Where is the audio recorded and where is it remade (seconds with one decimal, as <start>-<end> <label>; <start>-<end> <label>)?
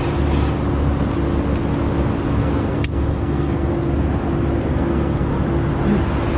0.0-2.4 recorded; 2.4-3.7 remade; 3.7-4.7 recorded; 4.7-5.3 remade; 5.3-6.4 recorded